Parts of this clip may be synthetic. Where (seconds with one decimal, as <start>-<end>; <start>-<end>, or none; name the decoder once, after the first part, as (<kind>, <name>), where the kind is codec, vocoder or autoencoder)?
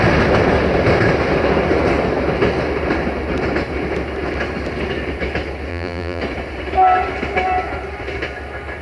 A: 5.7-6.2 (vocoder, BigVGAN v2)